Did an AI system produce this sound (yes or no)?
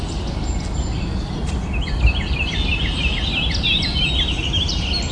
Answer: no